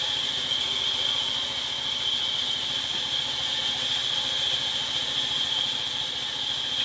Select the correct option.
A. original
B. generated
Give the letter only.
A